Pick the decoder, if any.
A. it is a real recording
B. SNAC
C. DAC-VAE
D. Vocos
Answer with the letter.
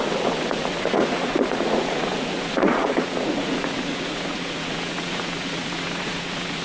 D